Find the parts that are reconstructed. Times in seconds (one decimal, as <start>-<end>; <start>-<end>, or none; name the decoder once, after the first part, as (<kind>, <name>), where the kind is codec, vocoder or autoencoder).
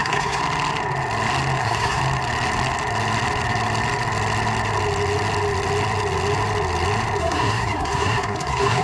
0.0-0.4 (codec, SNAC); 1.6-2.0; 7.2-8.8